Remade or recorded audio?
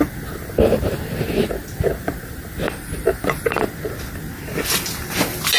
recorded